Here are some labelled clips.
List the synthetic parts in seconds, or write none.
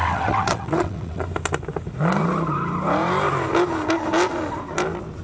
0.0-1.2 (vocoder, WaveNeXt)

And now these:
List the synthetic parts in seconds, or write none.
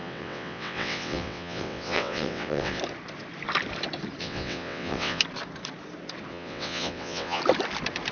0.0-2.8 (vocoder, WaveNeXt); 4.2-5.2; 6.3-7.4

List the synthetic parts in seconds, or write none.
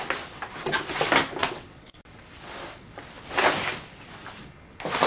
1.4-2.0 (vocoder, WaveNeXt)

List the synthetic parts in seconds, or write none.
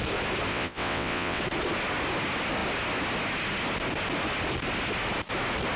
0.5-1.4 (vocoder, WaveNeXt)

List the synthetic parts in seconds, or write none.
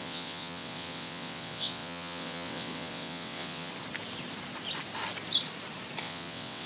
0.0-3.7 (vocoder, WaveNeXt); 6.0-6.7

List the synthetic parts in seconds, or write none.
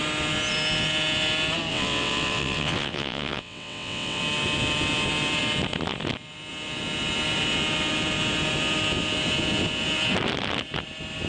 1.7-4.2 (vocoder, WaveNeXt)